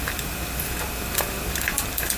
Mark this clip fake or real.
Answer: fake